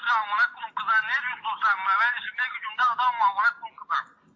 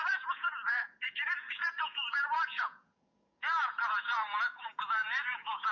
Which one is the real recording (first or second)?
first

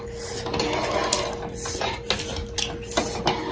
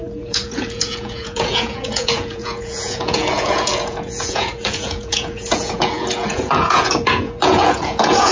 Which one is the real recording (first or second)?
first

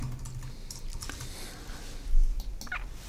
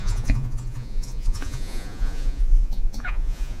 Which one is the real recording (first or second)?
first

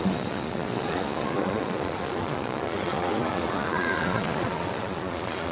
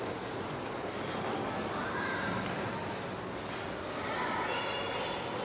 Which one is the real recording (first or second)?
second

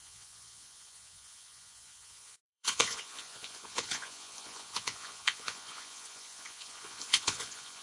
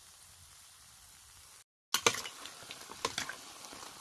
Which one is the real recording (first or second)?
second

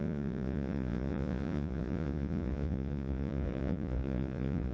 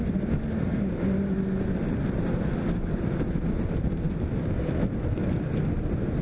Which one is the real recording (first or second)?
second